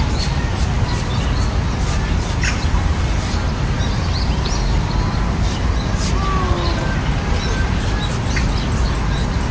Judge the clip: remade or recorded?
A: recorded